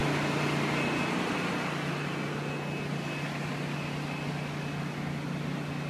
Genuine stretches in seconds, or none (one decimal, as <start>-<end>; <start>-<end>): 0.0-5.9